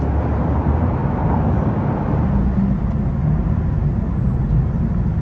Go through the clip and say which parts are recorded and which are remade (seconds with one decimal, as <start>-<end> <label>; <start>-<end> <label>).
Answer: 0.0-5.2 recorded